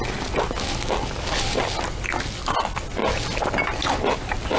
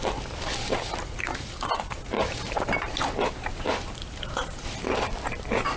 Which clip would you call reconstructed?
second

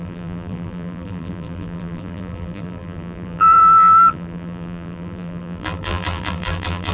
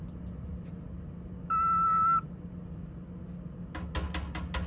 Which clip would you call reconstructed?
first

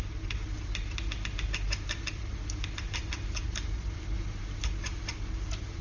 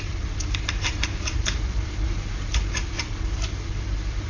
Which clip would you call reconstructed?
second